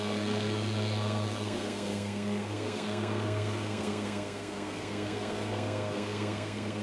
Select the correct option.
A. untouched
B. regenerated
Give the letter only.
B